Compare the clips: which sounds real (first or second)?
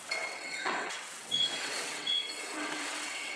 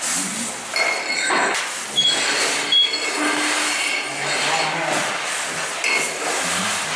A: second